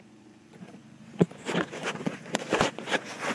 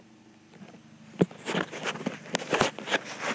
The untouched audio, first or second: second